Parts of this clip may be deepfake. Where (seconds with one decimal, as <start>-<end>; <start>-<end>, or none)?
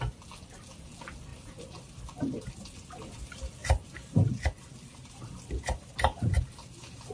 1.3-2.5; 3.6-4.3; 5.0-7.1